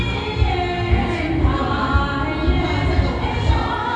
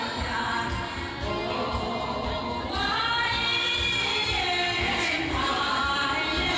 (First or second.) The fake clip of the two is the second